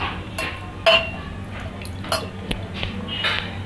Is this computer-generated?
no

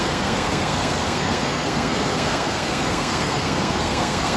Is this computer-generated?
yes